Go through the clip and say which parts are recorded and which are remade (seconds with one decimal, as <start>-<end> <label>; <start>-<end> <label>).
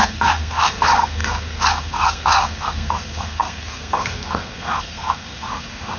0.0-6.0 remade